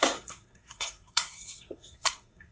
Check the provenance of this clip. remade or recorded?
remade